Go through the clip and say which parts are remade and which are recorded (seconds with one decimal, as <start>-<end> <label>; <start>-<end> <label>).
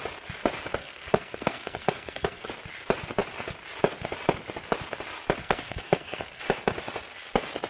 0.0-0.8 recorded; 0.8-2.5 remade; 2.5-5.4 recorded; 5.4-6.4 remade; 6.4-7.7 recorded